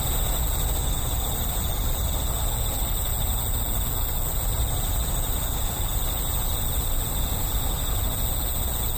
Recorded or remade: recorded